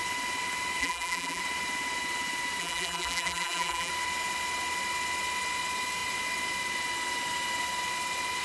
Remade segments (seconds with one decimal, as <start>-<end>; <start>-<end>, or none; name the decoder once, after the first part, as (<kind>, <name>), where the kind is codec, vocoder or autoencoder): 0.8-1.4 (vocoder, BigVGAN v2); 2.6-3.9